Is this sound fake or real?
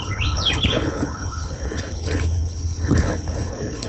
fake